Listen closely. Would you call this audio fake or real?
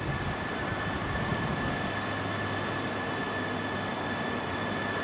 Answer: real